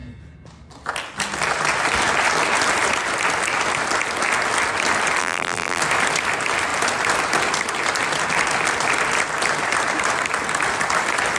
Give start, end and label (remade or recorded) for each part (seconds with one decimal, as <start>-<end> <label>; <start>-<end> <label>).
0.0-5.2 recorded; 5.2-5.8 remade; 5.8-11.4 recorded